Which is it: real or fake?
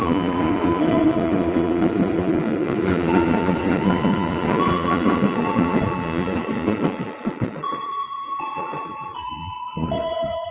fake